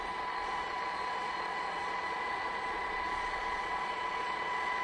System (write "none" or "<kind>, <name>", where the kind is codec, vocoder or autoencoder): vocoder, Vocos